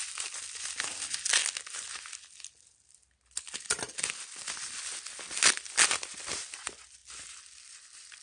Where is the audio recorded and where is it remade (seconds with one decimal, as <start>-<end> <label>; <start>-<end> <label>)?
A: 0.0-1.4 remade; 1.4-6.3 recorded; 6.3-8.2 remade